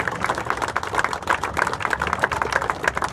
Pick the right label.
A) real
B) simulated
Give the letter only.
A